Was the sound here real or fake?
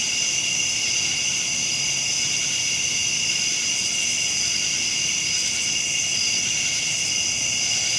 real